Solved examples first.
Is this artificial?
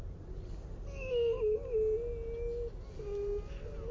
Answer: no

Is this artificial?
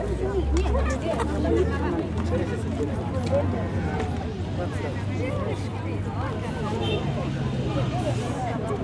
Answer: no